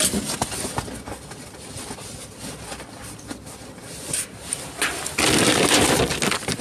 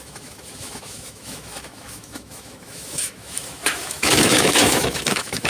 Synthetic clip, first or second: second